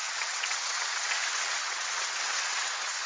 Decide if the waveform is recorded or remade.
remade